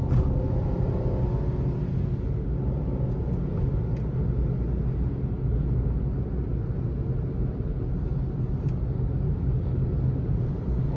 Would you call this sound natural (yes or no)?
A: yes